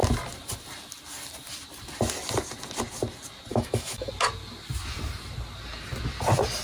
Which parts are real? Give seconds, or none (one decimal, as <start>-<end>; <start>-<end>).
0.0-3.5; 4.1-6.6